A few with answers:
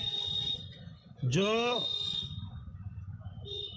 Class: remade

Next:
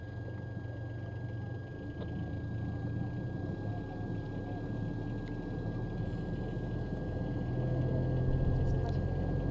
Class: recorded